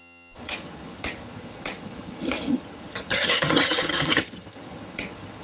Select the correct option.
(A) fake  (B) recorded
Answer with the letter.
A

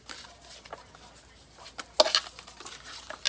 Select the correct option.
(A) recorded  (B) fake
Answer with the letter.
A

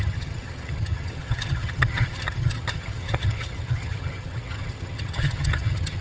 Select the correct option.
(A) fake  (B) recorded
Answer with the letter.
A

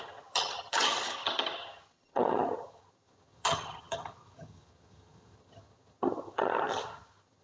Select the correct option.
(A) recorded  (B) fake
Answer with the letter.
B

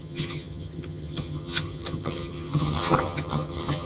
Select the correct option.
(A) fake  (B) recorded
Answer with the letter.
A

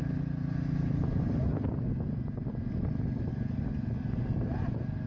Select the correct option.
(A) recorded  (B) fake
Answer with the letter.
A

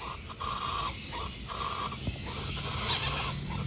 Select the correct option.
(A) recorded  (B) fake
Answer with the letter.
A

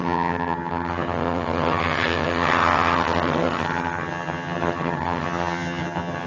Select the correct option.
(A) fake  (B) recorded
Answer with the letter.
A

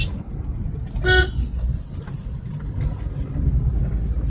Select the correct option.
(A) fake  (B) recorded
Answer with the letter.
B